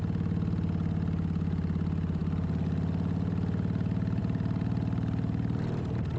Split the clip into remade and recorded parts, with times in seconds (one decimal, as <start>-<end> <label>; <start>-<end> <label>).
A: 0.0-4.2 recorded; 4.2-6.2 remade